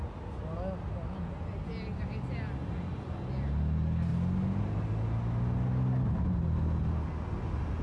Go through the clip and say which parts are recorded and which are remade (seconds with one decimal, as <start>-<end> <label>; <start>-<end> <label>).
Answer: 0.0-7.8 recorded